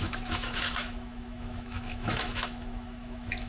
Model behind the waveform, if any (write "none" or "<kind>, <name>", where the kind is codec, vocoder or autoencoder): autoencoder, DAC-VAE